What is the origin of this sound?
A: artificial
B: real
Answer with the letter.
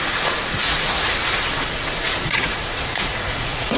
A